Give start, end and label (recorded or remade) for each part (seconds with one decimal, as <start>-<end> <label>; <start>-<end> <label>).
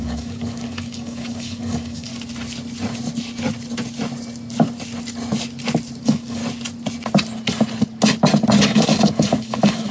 0.0-2.1 remade; 2.1-6.0 recorded; 6.0-6.4 remade; 6.4-8.6 recorded; 8.6-9.9 remade